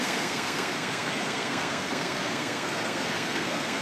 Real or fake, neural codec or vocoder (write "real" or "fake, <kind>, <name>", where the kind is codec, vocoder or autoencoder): fake, codec, SNAC